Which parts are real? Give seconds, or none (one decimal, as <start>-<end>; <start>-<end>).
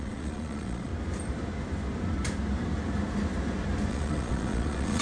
0.9-3.9